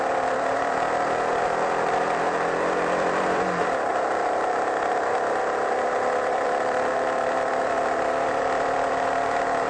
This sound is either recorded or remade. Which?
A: remade